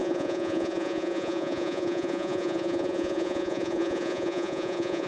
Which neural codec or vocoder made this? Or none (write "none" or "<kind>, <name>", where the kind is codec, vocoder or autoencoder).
vocoder, Vocos